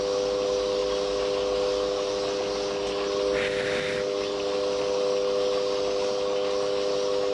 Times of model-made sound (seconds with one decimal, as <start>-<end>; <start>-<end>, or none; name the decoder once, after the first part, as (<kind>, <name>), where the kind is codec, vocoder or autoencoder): none